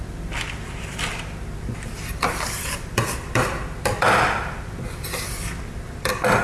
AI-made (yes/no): yes